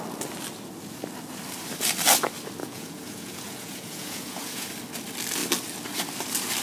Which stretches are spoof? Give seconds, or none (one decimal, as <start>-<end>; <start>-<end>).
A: 2.6-4.7